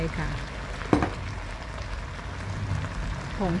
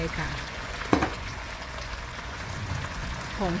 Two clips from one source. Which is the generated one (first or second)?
second